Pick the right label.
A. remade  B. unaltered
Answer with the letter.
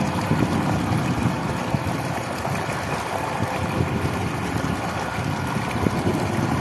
B